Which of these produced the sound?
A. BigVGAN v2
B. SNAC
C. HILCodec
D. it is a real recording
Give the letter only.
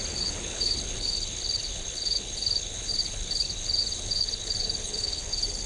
C